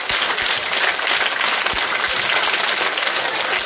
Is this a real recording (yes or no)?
yes